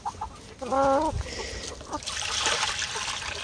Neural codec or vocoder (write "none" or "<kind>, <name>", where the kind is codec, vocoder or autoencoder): none